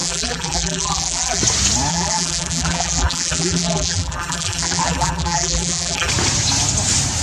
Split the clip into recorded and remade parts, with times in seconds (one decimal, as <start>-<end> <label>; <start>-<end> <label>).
0.0-1.4 remade; 1.4-1.9 recorded; 1.9-6.1 remade; 6.1-7.2 recorded